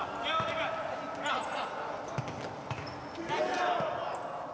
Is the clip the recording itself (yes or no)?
yes